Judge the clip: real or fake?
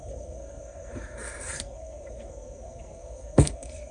fake